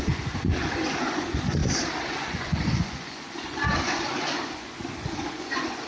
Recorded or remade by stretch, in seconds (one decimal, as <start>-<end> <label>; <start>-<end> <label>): 0.0-1.6 remade; 1.6-2.1 recorded; 2.1-5.9 remade